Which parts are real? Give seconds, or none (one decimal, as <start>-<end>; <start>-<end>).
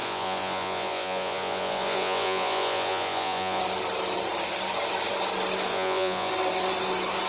3.6-5.7; 6.3-7.3